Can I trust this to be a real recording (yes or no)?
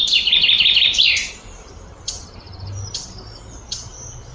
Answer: yes